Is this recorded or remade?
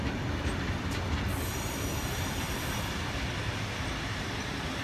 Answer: recorded